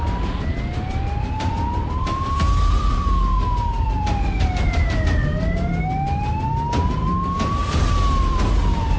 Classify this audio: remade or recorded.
recorded